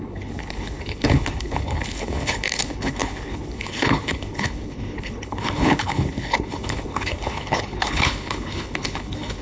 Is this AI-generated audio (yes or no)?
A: yes